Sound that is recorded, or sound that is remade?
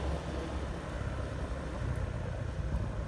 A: recorded